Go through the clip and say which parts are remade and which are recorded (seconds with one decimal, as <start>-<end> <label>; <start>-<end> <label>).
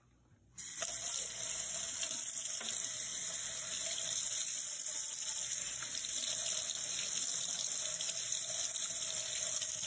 0.0-9.9 recorded